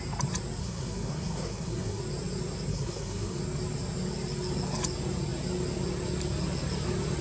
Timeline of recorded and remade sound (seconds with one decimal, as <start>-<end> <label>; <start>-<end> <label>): 0.0-0.6 recorded; 0.6-2.0 remade; 2.0-2.7 recorded; 2.7-3.4 remade; 3.4-7.2 recorded